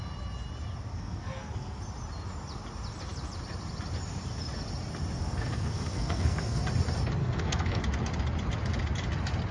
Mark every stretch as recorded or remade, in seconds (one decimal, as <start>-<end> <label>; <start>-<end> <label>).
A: 0.0-0.9 recorded; 0.9-1.8 remade; 1.8-5.2 recorded; 5.2-6.6 remade; 6.6-7.2 recorded; 7.2-7.8 remade; 7.8-9.5 recorded